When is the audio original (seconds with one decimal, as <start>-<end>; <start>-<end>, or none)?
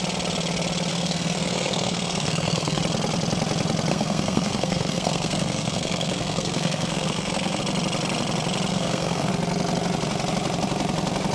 0.0-0.9; 2.8-3.9; 7.6-8.7; 9.3-11.3